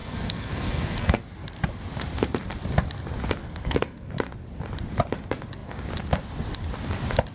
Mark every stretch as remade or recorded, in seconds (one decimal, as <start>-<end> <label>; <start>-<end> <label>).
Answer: 0.0-1.2 remade; 1.2-3.4 recorded; 3.4-4.1 remade; 4.1-7.3 recorded